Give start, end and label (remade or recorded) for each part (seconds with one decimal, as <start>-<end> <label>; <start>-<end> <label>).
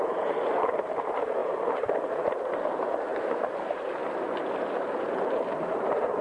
0.0-4.0 remade; 4.0-5.1 recorded; 5.1-6.2 remade